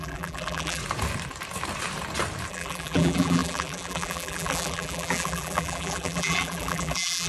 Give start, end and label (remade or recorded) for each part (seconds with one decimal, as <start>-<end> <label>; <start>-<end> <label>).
0.0-0.8 remade; 0.8-2.5 recorded; 2.5-7.3 remade